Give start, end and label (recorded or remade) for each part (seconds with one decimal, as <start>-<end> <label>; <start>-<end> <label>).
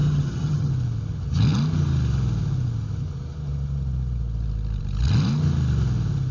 0.0-0.7 remade; 0.7-6.3 recorded